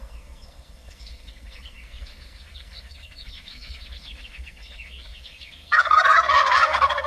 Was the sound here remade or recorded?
remade